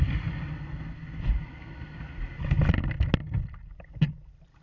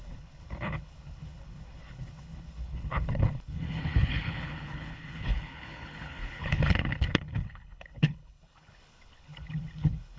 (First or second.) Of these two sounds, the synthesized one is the second